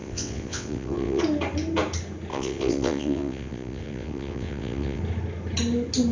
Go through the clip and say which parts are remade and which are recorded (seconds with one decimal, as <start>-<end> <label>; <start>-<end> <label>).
0.0-1.2 remade; 1.2-2.3 recorded; 2.3-5.0 remade; 5.0-6.1 recorded